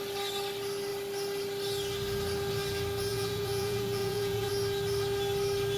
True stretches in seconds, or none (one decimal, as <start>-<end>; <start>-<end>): 0.0-3.1; 4.5-5.8